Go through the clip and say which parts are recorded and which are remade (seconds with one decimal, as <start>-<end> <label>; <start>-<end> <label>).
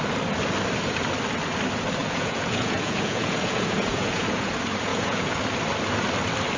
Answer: 0.0-2.0 recorded; 2.0-4.5 remade; 4.5-4.9 recorded; 4.9-5.4 remade; 5.4-6.6 recorded